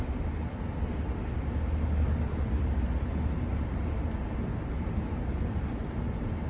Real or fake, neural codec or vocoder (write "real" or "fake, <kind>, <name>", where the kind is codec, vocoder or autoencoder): real